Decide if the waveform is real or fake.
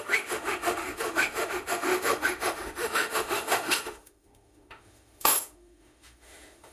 fake